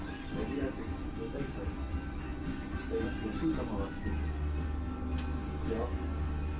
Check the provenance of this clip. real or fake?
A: real